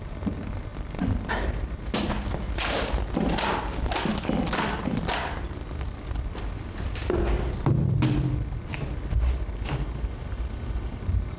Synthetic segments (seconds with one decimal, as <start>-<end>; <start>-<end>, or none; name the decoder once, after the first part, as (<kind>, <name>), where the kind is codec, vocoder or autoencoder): none